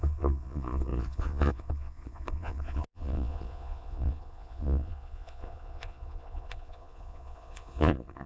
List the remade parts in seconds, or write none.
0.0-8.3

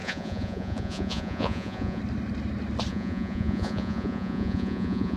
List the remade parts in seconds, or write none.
0.0-2.0; 2.9-5.2

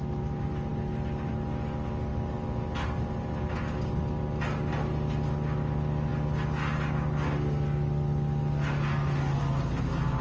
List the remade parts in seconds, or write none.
none